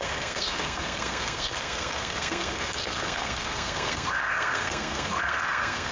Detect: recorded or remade remade